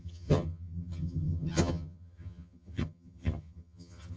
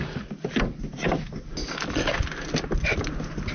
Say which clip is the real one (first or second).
second